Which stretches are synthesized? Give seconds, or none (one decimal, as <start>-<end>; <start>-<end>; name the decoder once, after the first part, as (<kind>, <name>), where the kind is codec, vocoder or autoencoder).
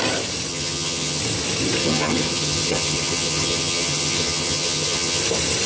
0.5-1.2 (vocoder, HiFi-GAN); 1.8-5.2